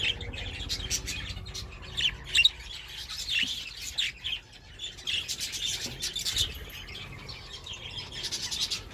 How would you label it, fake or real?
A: real